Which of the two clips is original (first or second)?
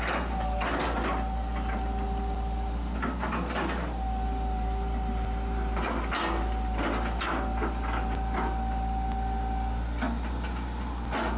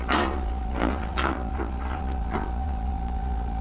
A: first